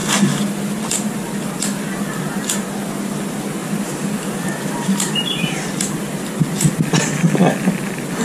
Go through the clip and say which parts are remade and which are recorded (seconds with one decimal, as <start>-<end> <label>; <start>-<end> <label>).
0.0-3.6 recorded; 3.6-5.8 remade; 5.8-8.2 recorded